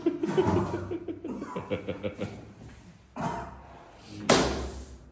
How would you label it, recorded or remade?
recorded